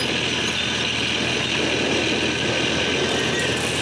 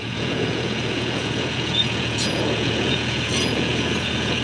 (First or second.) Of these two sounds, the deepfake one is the second